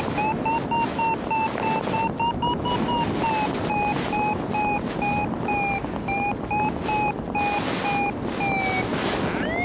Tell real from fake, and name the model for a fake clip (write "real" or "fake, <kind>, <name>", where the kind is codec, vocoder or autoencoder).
real